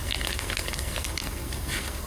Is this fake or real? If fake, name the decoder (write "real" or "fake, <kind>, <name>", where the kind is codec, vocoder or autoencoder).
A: fake, codec, SNAC